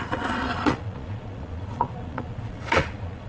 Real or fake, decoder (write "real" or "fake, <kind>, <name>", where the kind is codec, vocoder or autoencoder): fake, vocoder, Vocos